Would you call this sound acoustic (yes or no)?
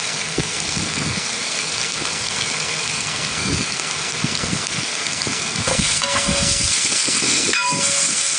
no